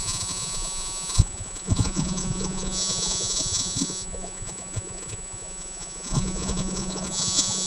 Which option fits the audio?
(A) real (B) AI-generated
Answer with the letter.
B